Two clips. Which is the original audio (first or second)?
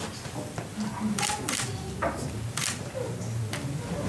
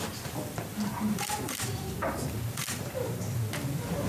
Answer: first